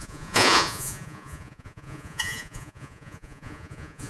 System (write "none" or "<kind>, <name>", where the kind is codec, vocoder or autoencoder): vocoder, Vocos